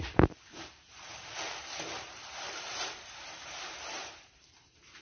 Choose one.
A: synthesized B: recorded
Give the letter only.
A